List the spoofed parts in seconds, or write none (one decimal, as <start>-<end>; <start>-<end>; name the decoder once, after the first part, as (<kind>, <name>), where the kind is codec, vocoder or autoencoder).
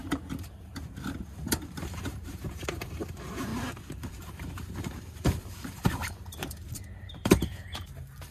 0.0-3.5 (vocoder, BigVGAN v2); 4.2-8.3